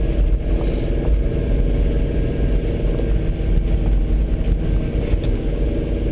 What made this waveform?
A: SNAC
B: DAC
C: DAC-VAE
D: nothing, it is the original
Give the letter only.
D